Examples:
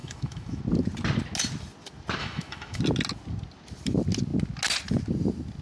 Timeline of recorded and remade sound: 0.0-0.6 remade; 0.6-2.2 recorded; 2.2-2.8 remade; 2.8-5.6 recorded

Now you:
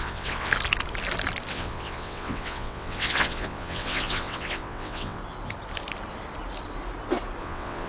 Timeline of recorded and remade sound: 0.0-0.5 remade; 0.5-1.5 recorded; 1.5-5.2 remade; 5.2-7.4 recorded; 7.4-7.9 remade